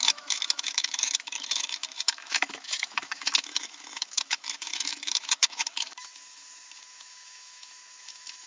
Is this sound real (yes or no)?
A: no